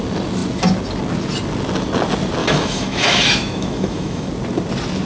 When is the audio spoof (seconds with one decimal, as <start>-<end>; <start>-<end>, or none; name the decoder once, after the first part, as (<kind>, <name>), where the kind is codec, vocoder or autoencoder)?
2.4-4.3 (autoencoder, DAC-VAE)